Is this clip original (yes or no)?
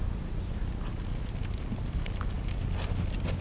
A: yes